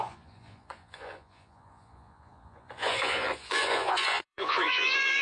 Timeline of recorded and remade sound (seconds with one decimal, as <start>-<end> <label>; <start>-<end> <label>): 0.0-5.2 remade